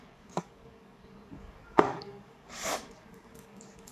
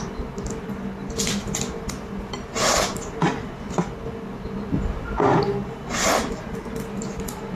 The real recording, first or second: second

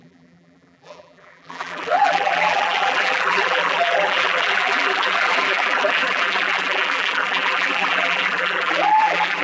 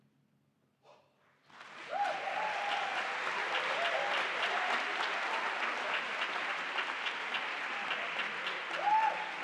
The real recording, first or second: second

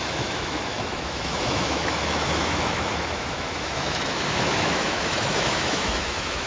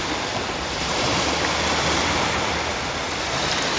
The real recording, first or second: second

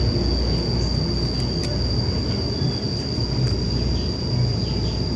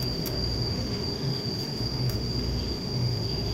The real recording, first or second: first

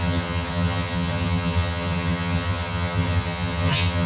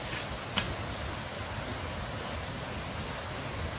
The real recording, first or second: second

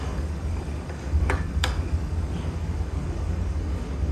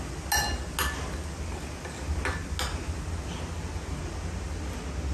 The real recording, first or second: second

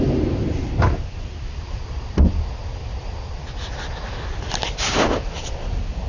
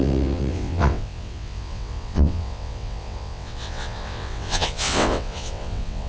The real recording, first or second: first